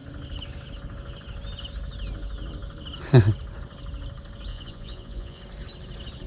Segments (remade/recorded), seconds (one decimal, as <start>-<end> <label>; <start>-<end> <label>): 0.0-4.5 recorded; 4.5-5.4 remade; 5.4-6.3 recorded